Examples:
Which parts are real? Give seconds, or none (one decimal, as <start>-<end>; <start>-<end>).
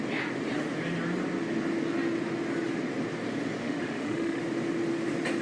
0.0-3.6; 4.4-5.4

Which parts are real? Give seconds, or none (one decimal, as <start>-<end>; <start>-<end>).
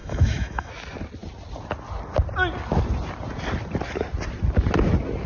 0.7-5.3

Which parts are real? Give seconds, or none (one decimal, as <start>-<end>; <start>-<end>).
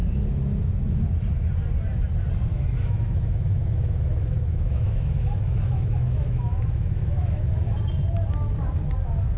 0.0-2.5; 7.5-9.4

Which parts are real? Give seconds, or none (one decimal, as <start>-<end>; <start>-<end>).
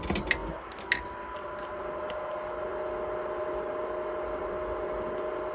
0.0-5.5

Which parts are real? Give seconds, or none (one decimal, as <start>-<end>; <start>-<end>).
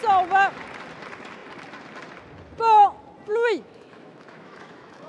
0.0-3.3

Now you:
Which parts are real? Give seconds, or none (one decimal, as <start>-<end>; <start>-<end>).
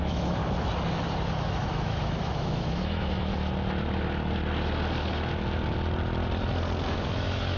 0.4-1.3; 3.3-6.9